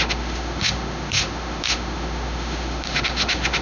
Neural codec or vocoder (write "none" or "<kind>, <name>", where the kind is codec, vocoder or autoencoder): autoencoder, DAC-VAE